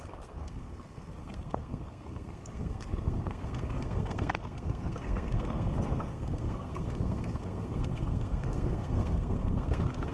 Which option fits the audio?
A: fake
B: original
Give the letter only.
A